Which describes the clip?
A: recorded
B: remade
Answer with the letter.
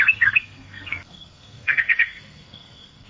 B